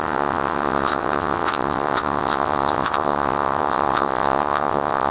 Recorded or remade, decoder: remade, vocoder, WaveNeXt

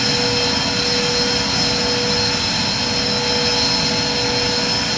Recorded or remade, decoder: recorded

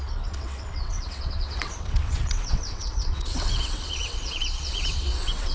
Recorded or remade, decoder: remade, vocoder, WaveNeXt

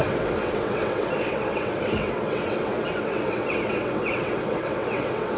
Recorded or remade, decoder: remade, vocoder, WaveNeXt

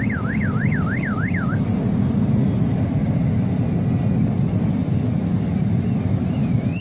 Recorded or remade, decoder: recorded